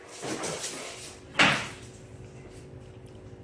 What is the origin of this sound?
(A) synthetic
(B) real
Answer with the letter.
B